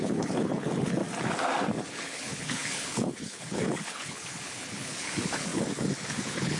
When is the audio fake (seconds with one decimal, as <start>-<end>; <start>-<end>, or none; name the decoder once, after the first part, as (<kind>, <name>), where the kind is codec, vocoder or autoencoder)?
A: 0.0-1.0 (codec, HILCodec); 1.9-6.6